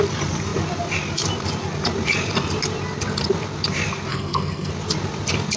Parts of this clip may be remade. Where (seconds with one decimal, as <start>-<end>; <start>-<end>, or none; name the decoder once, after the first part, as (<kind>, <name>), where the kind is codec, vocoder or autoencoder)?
4.1-4.7 (codec, SNAC)